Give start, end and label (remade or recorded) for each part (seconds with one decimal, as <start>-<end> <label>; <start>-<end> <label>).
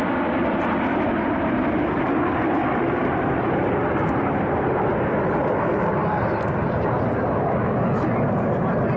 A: 0.0-6.0 recorded; 6.0-6.8 remade; 6.8-9.0 recorded